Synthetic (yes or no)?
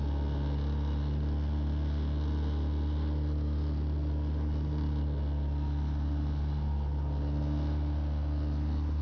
no